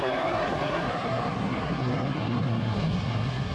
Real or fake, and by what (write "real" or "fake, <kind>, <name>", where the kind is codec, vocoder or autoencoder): fake, codec, SNAC